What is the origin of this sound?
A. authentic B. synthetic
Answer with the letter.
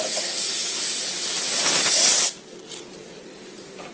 A